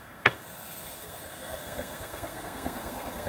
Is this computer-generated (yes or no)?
yes